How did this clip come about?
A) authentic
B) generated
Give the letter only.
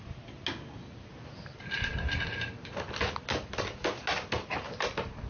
A